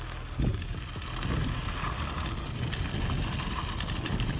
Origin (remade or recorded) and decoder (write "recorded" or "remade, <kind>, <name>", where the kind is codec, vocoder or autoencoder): recorded